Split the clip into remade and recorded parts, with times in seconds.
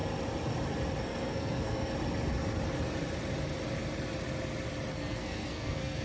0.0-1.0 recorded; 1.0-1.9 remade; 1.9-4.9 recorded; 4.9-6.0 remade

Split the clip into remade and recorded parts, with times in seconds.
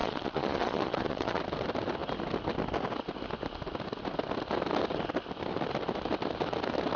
0.0-1.4 remade; 1.4-7.0 recorded